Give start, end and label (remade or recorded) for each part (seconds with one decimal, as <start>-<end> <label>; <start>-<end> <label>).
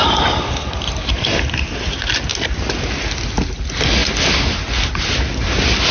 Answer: 0.0-5.9 recorded